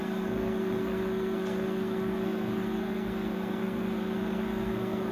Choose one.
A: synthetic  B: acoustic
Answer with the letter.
A